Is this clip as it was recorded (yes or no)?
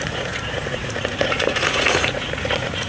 no